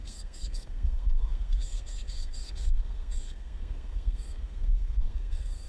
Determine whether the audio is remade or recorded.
remade